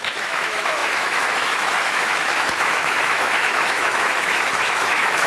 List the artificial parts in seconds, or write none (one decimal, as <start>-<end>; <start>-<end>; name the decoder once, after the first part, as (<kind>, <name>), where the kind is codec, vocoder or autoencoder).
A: 0.0-5.3 (autoencoder, DAC-VAE)